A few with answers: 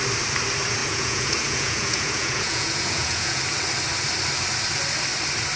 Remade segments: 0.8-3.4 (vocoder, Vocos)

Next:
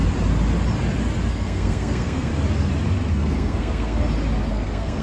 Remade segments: 1.3-2.3 (codec, SNAC); 3.1-4.0; 4.5-5.0

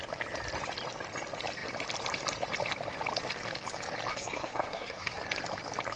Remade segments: 4.1-5.2 (codec, SNAC)

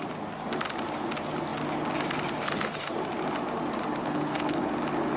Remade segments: 4.0-4.7 (codec, HILCodec)

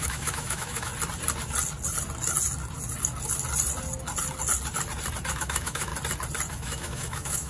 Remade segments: 0.0-0.9 (autoencoder, DAC-VAE); 5.3-5.9; 6.5-7.5